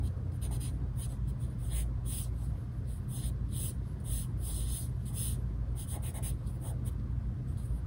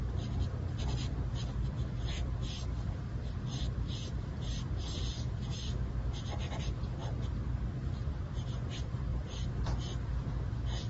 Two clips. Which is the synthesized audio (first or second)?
second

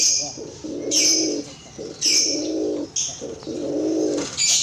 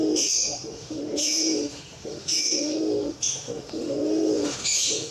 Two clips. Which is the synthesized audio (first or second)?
second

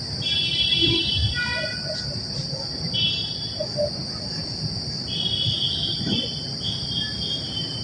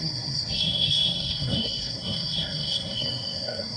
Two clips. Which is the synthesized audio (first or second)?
second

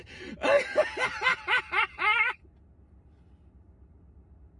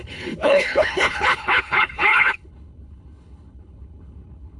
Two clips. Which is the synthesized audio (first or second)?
second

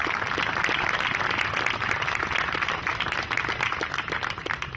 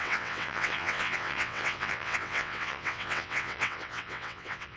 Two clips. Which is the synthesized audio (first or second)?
second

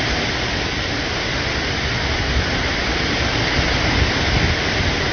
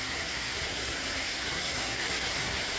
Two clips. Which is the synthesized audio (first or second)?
second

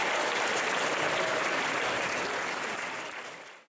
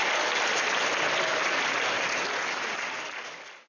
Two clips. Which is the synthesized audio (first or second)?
first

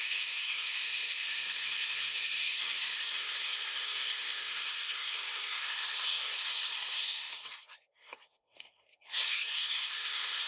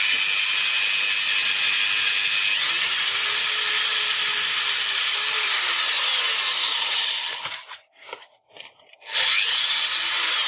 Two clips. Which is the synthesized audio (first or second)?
first